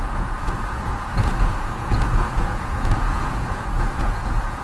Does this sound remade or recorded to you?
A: remade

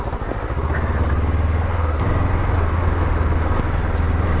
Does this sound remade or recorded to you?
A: recorded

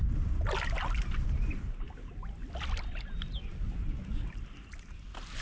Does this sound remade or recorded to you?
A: recorded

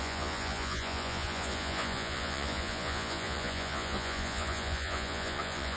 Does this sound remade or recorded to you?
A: remade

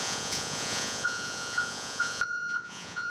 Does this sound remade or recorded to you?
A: remade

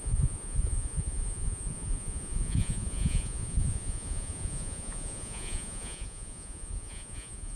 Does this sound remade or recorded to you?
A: remade